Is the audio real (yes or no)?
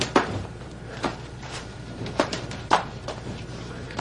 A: no